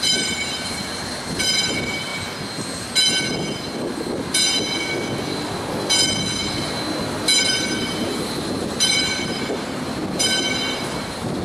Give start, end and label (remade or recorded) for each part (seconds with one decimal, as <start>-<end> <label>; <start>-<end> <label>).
0.0-2.1 remade; 2.1-7.4 recorded; 7.4-10.0 remade; 10.0-10.7 recorded; 10.7-11.4 remade